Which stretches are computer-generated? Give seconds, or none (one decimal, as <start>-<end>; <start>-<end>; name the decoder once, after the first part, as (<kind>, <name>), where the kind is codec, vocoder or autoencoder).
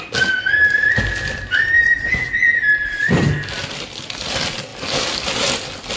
none